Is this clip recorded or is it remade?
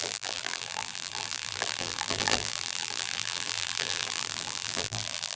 remade